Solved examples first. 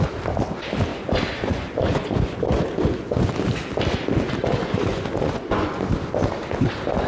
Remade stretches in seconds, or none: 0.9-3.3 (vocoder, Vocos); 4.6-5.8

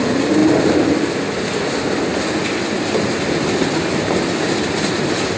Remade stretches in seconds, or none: none